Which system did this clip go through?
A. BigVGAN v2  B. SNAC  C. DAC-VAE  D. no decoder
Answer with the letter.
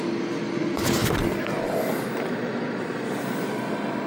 D